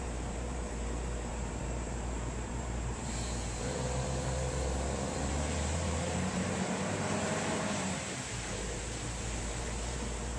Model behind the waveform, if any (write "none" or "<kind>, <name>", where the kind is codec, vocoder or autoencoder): vocoder, BigVGAN v2